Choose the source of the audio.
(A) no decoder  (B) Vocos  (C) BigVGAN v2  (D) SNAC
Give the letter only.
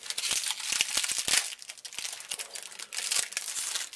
A